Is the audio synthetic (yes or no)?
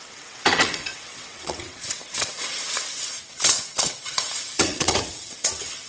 yes